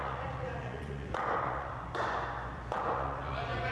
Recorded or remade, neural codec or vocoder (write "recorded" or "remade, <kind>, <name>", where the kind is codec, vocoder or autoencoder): remade, vocoder, Vocos